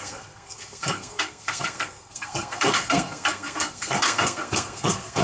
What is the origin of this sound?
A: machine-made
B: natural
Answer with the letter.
A